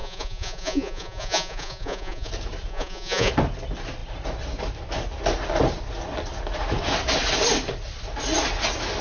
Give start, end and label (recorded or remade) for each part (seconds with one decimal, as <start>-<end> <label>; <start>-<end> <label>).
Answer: 0.0-2.3 remade; 2.3-2.7 recorded; 2.7-3.3 remade; 3.3-9.0 recorded